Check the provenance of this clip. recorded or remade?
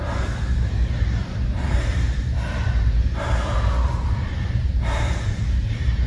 remade